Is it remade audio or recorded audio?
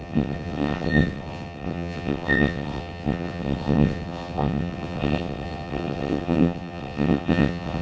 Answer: remade